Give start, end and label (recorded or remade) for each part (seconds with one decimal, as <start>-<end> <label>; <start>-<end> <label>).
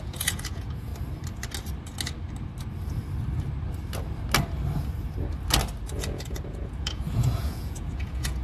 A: 0.0-0.9 remade; 0.9-5.9 recorded; 5.9-8.4 remade